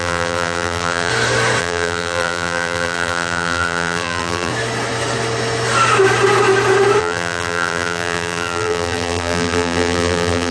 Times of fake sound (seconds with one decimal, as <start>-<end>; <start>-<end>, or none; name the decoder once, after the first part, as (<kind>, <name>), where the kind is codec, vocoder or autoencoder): 0.0-1.1 (vocoder, BigVGAN v2); 1.6-4.5; 7.0-10.5